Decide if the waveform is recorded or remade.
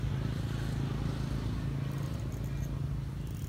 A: recorded